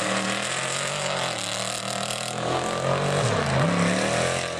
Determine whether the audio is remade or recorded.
recorded